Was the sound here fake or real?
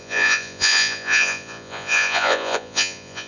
fake